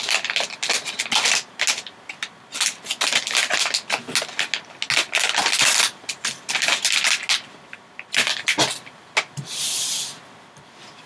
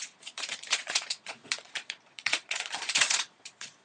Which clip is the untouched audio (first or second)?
first